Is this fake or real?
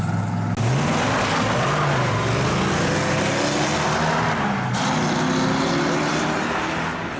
real